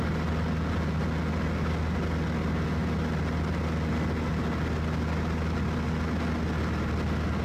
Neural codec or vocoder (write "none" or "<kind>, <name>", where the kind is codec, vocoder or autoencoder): none